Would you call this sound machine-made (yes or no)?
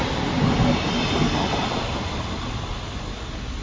no